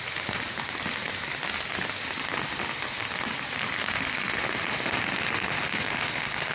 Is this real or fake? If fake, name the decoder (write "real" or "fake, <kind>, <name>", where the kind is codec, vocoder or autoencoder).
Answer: real